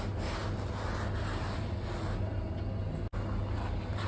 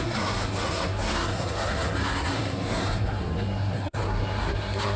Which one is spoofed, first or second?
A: second